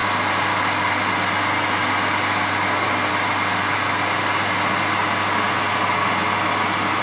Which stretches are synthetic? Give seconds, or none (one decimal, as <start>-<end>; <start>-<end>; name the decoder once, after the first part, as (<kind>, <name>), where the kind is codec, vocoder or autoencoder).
none